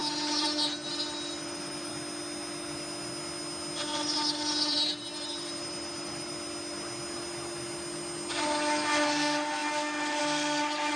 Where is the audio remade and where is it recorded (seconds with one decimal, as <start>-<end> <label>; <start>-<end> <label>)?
0.0-1.9 remade; 1.9-4.7 recorded; 4.7-6.3 remade; 6.3-11.0 recorded